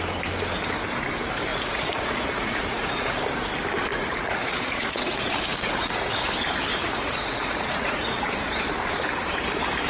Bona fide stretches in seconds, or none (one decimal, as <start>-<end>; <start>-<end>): 0.0-1.5; 3.2-3.9; 6.3-6.7; 8.6-9.9